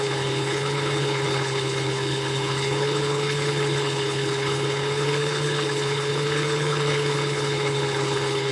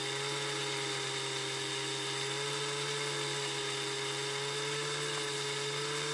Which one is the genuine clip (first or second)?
second